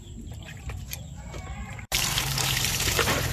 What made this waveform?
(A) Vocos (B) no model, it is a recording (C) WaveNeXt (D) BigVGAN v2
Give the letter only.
D